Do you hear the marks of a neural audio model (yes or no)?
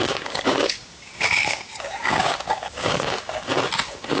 yes